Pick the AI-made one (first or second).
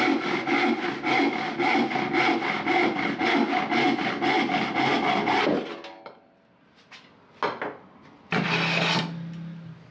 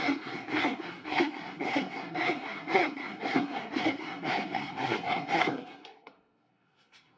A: second